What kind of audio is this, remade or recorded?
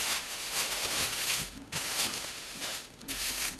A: remade